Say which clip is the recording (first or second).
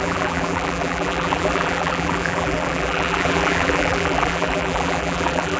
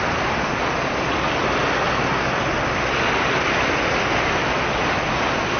second